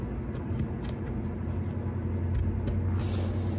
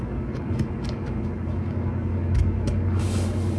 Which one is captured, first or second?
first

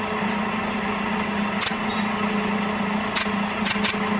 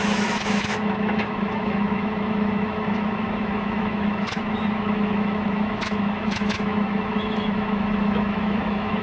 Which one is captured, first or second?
first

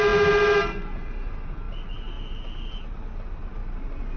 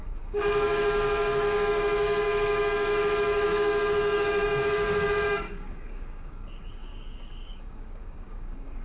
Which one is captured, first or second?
first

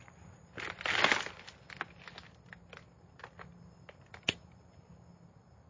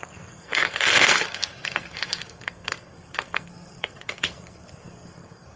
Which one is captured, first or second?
first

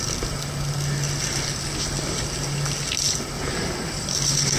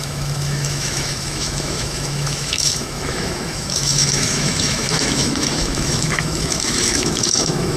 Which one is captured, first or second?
first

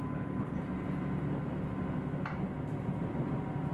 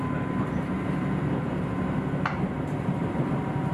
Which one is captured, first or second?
first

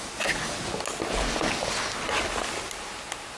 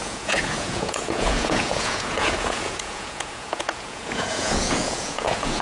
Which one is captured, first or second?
first